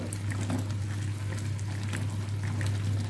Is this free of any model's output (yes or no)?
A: yes